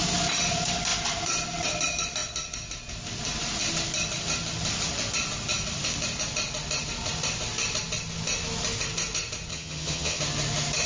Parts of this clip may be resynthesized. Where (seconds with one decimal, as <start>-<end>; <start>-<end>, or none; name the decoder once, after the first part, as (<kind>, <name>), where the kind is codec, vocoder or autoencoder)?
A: 9.5-10.2 (vocoder, HiFi-GAN)